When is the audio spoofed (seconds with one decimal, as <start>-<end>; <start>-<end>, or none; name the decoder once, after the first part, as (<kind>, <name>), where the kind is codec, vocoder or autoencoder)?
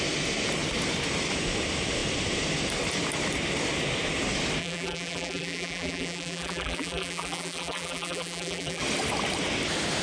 4.6-8.8 (vocoder, BigVGAN v2)